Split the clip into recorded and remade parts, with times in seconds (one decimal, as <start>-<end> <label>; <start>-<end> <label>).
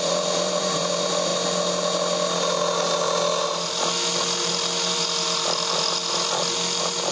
0.0-1.3 remade; 1.3-4.5 recorded; 4.5-6.0 remade; 6.0-7.1 recorded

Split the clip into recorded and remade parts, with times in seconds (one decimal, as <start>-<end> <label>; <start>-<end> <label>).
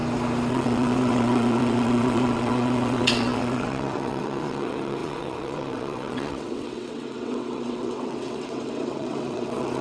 0.0-0.5 recorded; 0.5-9.8 remade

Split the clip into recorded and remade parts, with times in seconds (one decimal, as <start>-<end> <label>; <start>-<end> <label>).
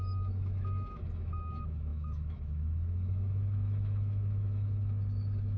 0.0-5.6 remade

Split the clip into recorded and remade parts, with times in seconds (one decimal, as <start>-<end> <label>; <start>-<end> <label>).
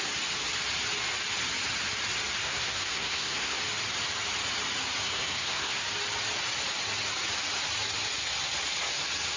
0.0-2.4 recorded; 2.4-3.6 remade; 3.6-5.0 recorded; 5.0-5.8 remade; 5.8-9.4 recorded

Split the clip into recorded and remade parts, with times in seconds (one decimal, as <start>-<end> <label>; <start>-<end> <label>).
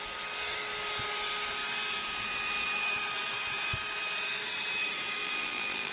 0.0-5.2 recorded; 5.2-5.9 remade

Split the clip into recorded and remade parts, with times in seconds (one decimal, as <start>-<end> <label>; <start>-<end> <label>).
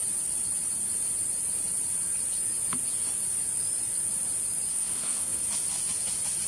0.0-4.7 recorded; 4.7-5.4 remade; 5.4-6.5 recorded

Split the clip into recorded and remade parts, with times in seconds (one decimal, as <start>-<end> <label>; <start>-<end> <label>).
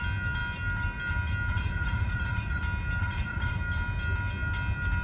0.0-1.5 recorded; 1.5-2.6 remade; 2.6-3.0 recorded; 3.0-3.6 remade; 3.6-5.0 recorded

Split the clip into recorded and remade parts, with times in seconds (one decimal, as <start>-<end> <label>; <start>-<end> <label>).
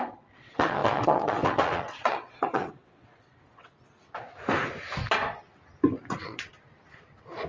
0.0-3.7 remade; 3.7-6.0 recorded; 6.0-6.5 remade; 6.5-7.5 recorded